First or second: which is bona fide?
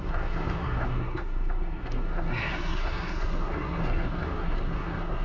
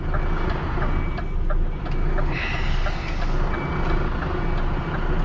second